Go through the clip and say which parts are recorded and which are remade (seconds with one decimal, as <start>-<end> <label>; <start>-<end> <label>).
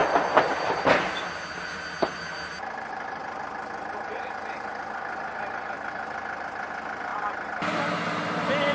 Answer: 0.0-1.3 remade; 1.3-3.2 recorded; 3.2-5.9 remade; 5.9-7.1 recorded; 7.1-7.8 remade; 7.8-8.7 recorded